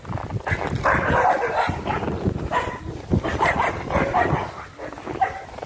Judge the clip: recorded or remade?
recorded